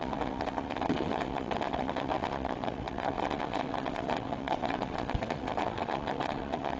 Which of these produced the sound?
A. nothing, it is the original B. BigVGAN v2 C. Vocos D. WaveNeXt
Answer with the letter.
D